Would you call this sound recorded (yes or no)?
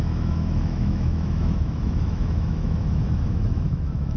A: no